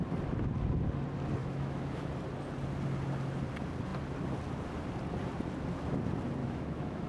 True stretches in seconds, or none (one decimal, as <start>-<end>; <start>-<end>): 0.0-1.4; 2.1-6.4